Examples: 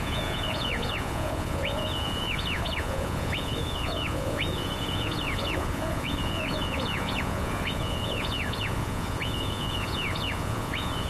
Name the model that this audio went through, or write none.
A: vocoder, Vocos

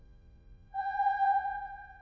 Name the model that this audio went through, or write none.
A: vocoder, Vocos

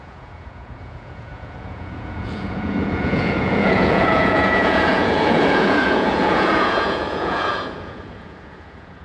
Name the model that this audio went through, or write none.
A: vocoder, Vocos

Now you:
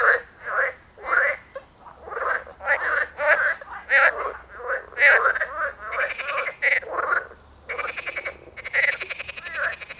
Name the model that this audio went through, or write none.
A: none